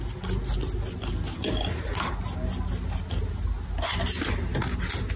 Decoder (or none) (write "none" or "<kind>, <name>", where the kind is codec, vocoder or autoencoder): none